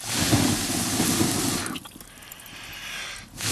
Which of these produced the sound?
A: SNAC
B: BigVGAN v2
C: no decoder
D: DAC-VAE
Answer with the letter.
C